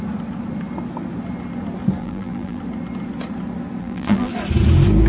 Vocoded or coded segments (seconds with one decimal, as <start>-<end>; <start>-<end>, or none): 2.0-2.6; 3.8-4.3